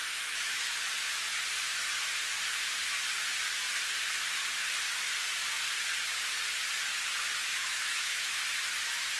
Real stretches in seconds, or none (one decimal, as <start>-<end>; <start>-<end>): 0.7-7.5; 8.4-9.2